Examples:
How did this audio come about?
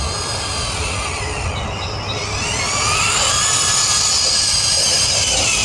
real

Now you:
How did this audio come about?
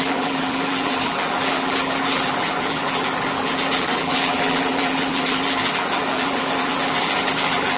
fake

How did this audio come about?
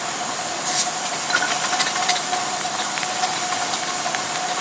fake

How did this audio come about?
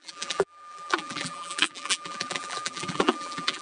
fake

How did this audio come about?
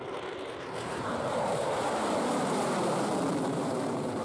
fake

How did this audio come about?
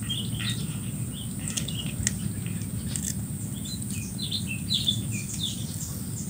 real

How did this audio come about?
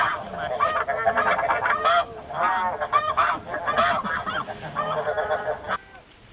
real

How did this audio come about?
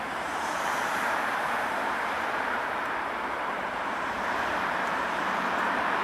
fake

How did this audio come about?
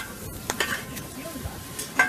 fake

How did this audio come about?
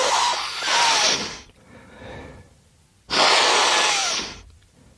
real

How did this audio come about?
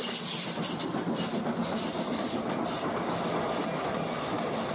real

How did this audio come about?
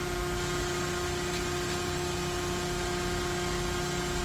real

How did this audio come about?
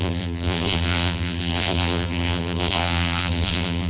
fake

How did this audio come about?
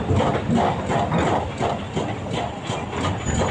real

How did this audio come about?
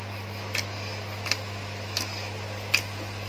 real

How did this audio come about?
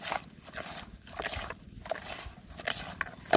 real